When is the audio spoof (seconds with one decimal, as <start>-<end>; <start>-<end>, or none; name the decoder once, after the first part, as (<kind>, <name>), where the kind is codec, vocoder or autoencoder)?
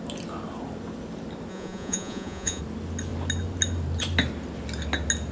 1.5-2.6 (vocoder, Vocos)